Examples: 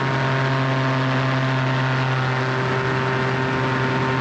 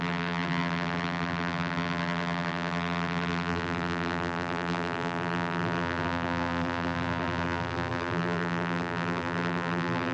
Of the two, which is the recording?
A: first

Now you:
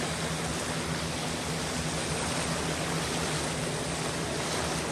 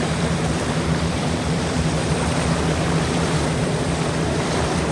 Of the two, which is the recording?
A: first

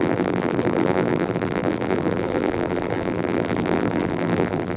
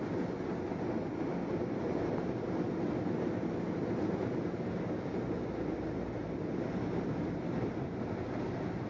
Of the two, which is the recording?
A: second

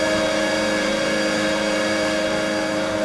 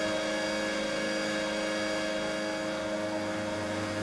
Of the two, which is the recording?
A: second